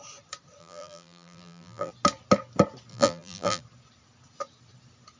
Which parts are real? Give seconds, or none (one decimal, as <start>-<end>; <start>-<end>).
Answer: 0.0-0.6; 1.9-2.9; 3.6-5.2